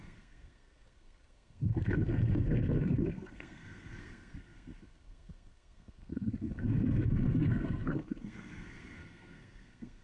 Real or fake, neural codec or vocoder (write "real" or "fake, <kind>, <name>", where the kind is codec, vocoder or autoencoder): fake, codec, SNAC